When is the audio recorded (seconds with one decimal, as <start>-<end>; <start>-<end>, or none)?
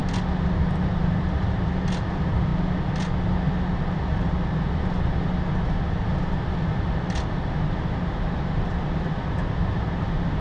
0.0-10.4